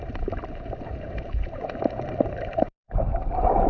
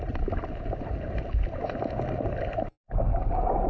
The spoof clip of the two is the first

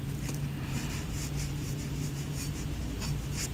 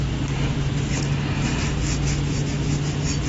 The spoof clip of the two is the first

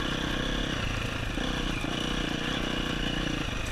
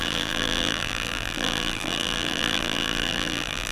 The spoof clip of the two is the second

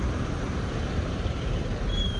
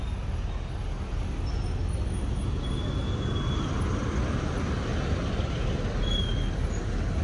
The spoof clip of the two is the first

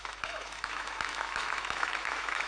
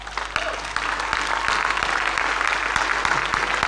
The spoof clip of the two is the first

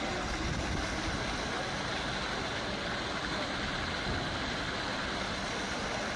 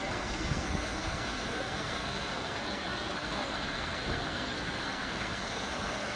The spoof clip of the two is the second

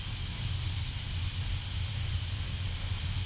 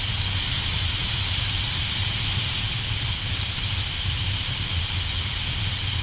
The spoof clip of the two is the second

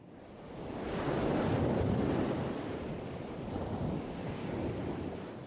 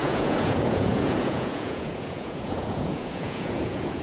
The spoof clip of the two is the second